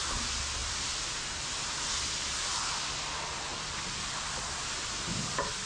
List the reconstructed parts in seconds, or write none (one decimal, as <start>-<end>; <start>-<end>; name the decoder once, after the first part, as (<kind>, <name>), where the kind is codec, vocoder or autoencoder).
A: 0.6-1.3 (vocoder, BigVGAN v2); 3.5-4.4